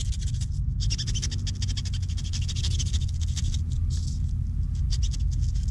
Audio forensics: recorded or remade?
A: recorded